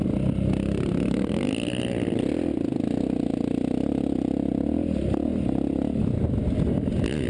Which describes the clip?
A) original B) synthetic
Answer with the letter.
A